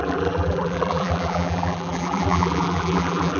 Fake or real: fake